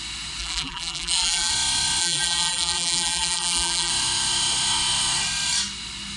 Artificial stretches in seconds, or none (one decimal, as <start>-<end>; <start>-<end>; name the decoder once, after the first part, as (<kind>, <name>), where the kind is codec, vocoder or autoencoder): 0.4-1.5 (vocoder, BigVGAN v2); 2.0-3.9